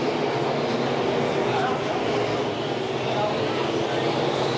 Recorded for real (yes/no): yes